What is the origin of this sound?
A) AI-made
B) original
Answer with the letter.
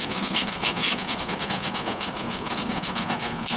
A